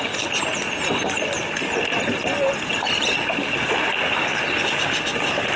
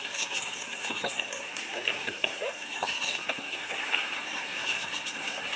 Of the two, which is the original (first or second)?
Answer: first